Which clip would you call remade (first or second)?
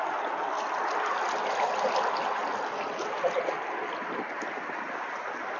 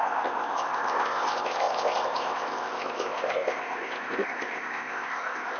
second